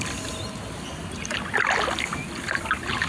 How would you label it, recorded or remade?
recorded